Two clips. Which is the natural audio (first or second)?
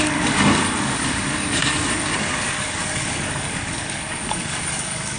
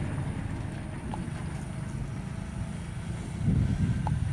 second